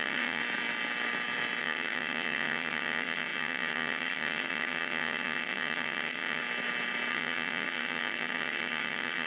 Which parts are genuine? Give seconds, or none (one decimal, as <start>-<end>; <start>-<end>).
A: 0.4-1.6; 6.4-7.1